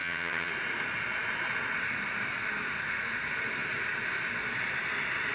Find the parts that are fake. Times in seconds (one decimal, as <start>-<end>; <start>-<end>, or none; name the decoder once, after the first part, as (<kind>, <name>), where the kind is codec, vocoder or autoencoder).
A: 0.0-0.5 (vocoder, HiFi-GAN)